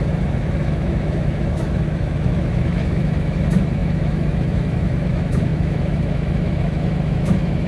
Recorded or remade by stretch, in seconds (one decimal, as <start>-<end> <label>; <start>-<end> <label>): 0.0-7.7 remade